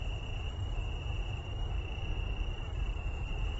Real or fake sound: fake